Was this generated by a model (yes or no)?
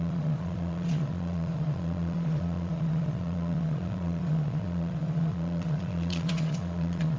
yes